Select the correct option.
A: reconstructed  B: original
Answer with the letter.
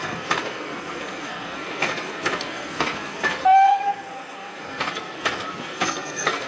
A